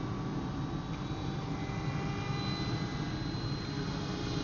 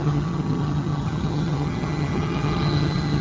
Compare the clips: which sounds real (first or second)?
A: first